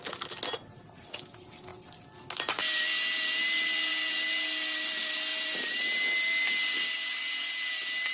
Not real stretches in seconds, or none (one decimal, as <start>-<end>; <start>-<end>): none